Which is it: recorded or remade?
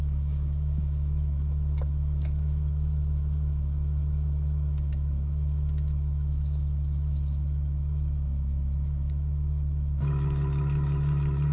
remade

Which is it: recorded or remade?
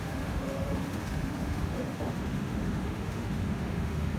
remade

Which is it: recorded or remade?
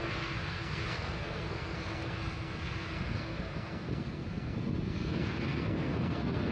remade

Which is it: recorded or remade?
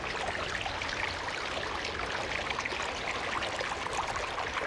recorded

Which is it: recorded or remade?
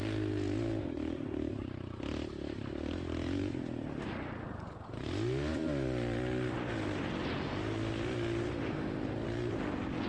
recorded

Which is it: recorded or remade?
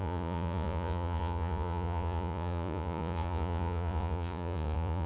remade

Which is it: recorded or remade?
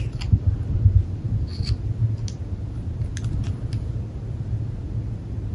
recorded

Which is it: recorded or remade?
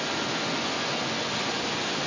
remade